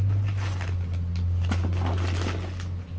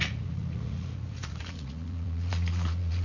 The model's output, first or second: second